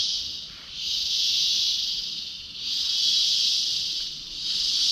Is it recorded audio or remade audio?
recorded